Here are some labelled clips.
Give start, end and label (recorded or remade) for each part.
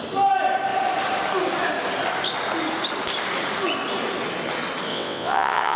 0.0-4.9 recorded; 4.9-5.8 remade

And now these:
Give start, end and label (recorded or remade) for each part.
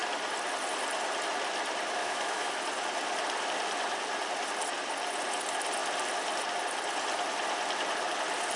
0.0-2.0 recorded; 2.0-2.5 remade; 2.5-8.6 recorded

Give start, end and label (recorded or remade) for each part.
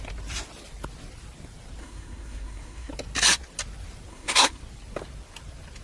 0.0-1.8 recorded; 1.8-2.9 remade; 2.9-4.1 recorded; 4.1-4.6 remade; 4.6-5.8 recorded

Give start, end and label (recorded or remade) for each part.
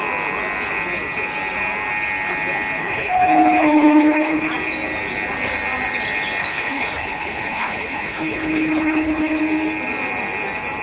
0.0-2.8 recorded; 2.8-4.5 remade; 4.5-6.4 recorded; 6.4-9.4 remade; 9.4-10.8 recorded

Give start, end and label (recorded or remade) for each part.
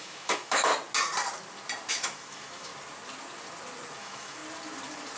0.0-0.7 remade; 0.7-1.9 recorded; 1.9-2.7 remade; 2.7-4.0 recorded; 4.0-4.4 remade; 4.4-5.2 recorded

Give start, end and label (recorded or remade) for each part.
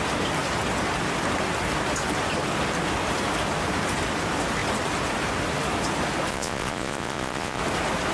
0.0-6.3 recorded; 6.3-7.6 remade; 7.6-8.1 recorded